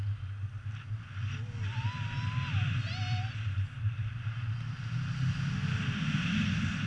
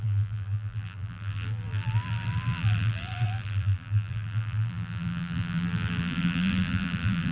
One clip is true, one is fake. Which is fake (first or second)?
second